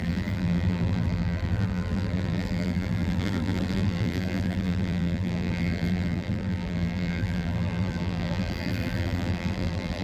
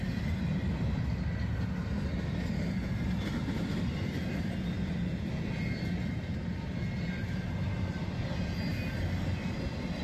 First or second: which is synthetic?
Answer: first